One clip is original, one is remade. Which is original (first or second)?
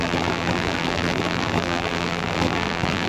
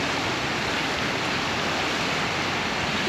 second